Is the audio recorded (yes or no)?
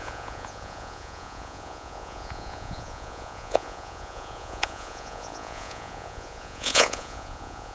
no